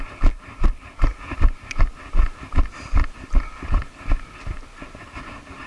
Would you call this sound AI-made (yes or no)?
no